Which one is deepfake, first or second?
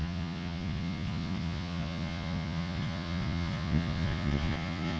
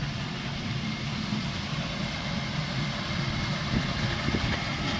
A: first